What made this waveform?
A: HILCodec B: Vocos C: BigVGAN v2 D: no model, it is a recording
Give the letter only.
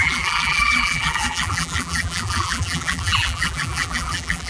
C